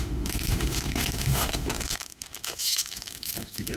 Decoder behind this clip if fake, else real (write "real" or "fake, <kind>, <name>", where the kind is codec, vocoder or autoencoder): fake, autoencoder, DAC-VAE